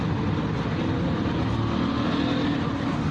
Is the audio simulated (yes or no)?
no